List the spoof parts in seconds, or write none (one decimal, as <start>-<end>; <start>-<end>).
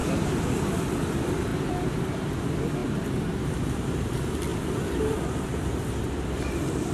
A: 0.0-1.5; 2.3-2.8; 3.5-6.9